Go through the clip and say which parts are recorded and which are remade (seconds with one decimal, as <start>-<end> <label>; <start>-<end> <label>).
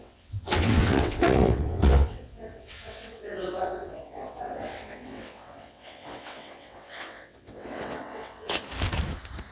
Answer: 0.0-8.6 remade; 8.6-9.5 recorded